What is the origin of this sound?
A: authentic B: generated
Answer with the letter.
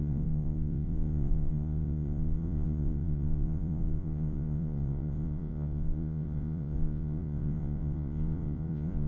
B